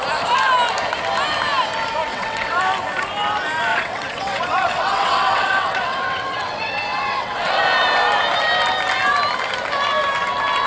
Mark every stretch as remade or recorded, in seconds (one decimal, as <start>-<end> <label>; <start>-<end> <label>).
0.0-2.1 recorded; 2.1-2.6 remade; 2.6-3.7 recorded; 3.7-7.6 remade; 7.6-10.7 recorded